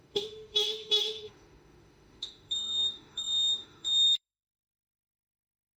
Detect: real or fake fake